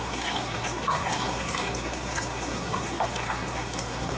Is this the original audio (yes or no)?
no